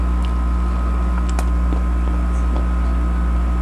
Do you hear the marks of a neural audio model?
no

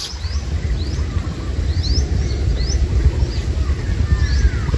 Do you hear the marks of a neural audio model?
no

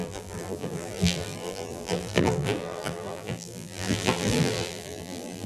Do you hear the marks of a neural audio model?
yes